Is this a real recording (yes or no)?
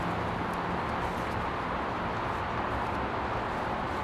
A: yes